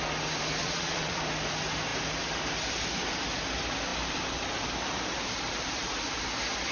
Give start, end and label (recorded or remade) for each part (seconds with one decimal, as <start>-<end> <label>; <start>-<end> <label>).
0.0-0.6 recorded; 0.6-1.2 remade; 1.2-6.7 recorded